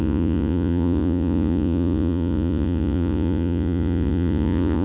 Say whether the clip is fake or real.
fake